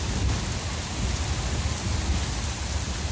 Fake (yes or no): no